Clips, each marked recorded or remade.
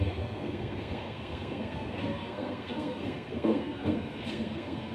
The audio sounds remade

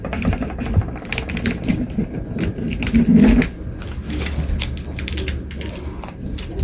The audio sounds recorded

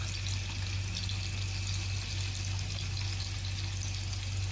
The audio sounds recorded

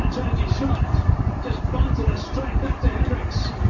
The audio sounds recorded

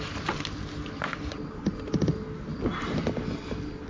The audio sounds recorded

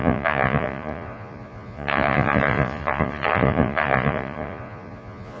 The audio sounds remade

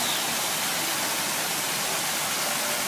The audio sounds recorded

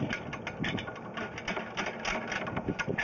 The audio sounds recorded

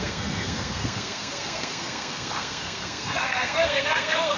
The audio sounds remade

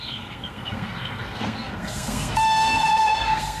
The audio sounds remade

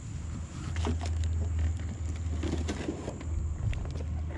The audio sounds recorded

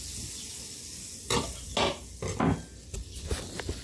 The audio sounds recorded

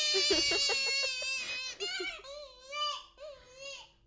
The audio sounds recorded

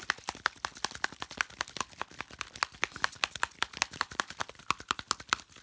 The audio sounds recorded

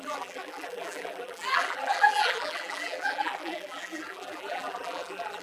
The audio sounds remade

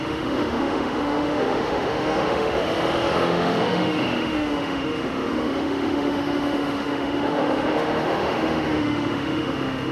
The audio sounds remade